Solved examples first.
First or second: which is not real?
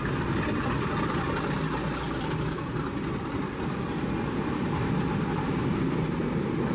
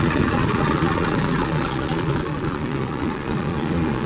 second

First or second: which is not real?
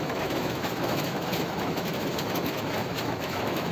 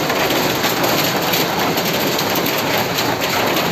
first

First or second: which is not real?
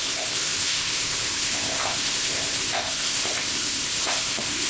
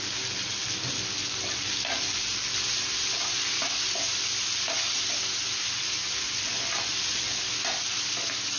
first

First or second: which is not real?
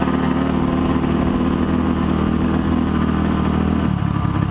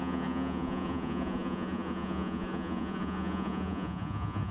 second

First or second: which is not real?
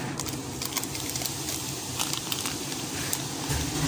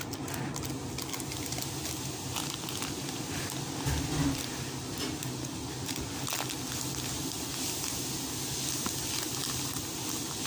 first